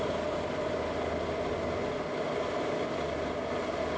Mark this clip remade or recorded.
recorded